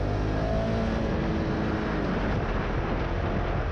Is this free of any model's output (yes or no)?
yes